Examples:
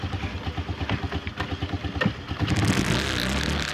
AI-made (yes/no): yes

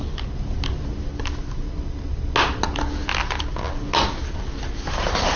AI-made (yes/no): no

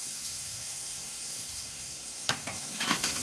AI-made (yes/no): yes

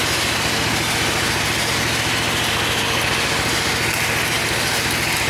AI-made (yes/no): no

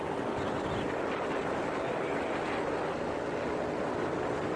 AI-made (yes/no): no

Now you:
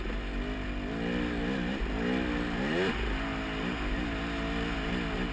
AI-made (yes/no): no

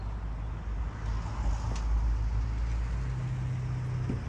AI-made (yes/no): no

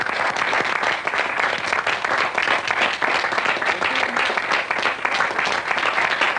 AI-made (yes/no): no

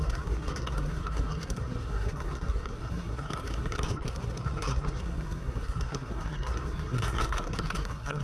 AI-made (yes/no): yes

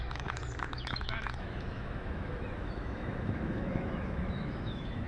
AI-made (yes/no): yes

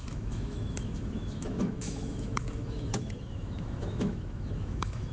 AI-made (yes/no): yes